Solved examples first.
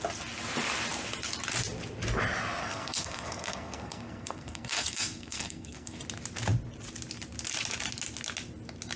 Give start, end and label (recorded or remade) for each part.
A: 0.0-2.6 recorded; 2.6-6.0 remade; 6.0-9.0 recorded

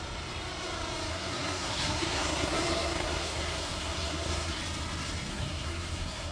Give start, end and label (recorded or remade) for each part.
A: 0.0-1.1 recorded; 1.1-4.6 remade; 4.6-5.3 recorded; 5.3-6.3 remade

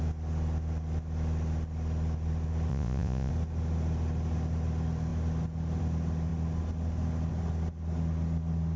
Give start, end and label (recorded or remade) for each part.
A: 0.0-2.7 recorded; 2.7-3.3 remade; 3.3-8.8 recorded